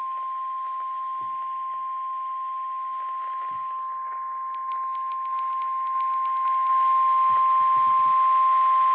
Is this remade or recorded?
recorded